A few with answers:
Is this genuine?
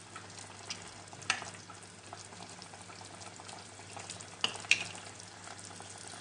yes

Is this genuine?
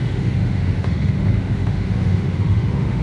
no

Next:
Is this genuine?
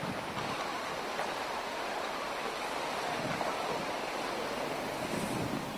no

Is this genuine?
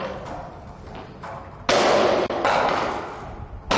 yes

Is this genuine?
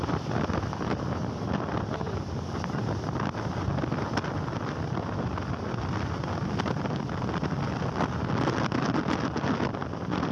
yes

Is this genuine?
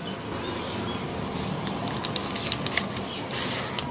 yes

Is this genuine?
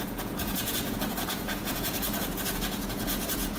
no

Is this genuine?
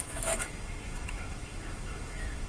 no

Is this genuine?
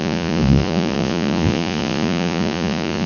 no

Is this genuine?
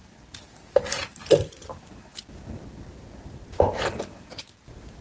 yes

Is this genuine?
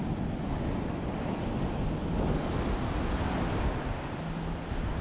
yes